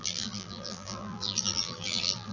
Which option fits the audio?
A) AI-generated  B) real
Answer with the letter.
A